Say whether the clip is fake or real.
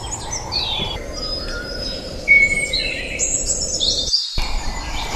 fake